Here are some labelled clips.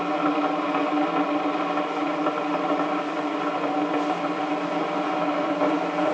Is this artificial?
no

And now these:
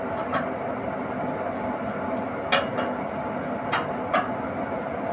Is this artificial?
no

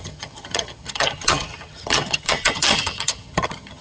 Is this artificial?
yes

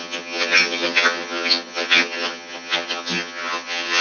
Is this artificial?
yes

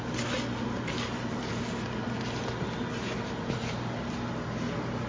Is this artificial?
no